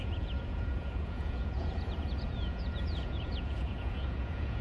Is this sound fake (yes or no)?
yes